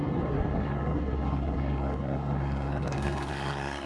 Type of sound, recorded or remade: remade